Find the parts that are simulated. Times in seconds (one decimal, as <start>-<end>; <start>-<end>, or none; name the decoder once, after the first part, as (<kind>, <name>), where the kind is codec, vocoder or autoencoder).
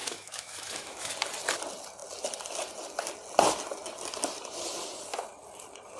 0.0-1.1 (autoencoder, DAC-VAE)